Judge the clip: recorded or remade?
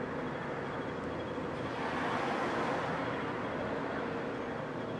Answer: recorded